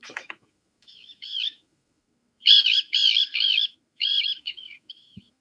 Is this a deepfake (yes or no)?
yes